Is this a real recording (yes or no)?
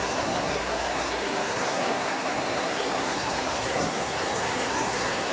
no